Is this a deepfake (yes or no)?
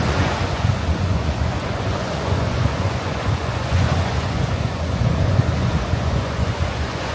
yes